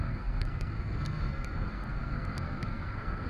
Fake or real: fake